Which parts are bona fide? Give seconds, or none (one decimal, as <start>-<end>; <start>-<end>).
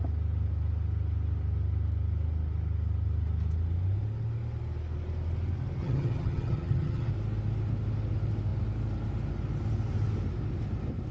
0.0-5.8; 7.1-11.1